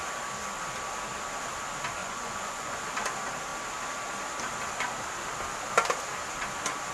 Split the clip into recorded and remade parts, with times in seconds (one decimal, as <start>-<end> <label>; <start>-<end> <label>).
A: 0.0-2.0 recorded; 2.0-2.8 remade; 2.8-6.9 recorded